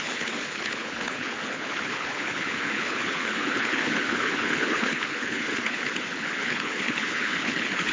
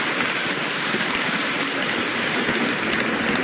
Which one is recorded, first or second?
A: second